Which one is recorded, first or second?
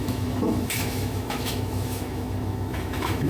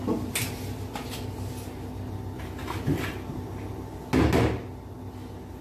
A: second